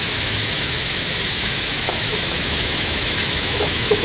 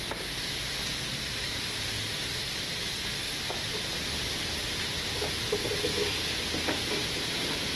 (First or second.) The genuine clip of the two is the second